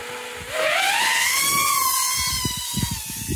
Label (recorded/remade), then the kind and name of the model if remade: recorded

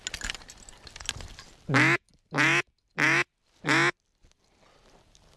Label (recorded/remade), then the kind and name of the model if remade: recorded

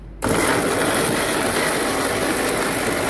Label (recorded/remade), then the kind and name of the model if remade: recorded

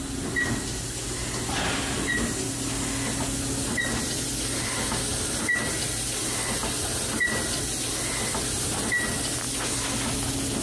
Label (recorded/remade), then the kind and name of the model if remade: recorded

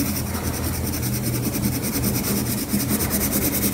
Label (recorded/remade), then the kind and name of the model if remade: recorded